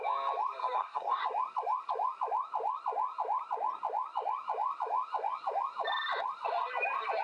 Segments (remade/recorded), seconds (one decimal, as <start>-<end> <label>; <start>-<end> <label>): 0.0-0.6 recorded; 0.6-1.2 remade; 1.2-7.2 recorded